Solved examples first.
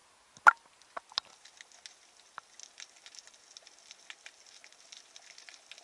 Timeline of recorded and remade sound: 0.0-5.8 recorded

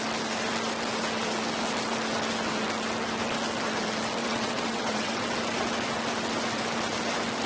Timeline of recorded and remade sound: 0.0-4.2 recorded; 4.2-5.2 remade; 5.2-7.5 recorded